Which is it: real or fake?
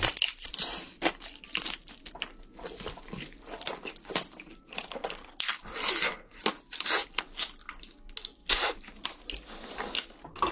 real